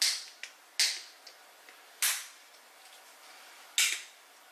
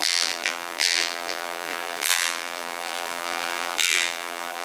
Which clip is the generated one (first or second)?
second